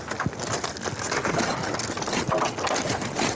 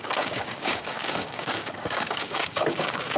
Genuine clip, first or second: first